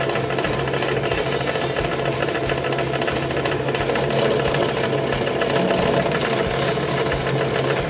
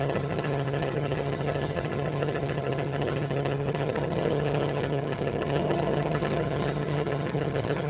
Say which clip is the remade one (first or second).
second